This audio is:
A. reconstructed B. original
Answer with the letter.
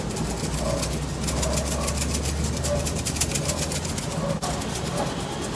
B